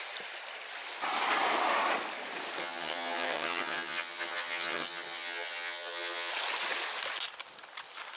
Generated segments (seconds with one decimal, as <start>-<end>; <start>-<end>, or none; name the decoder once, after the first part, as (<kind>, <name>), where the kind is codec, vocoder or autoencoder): 2.6-6.3 (vocoder, HiFi-GAN)